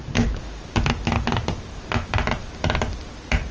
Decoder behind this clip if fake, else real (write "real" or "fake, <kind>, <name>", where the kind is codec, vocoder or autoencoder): real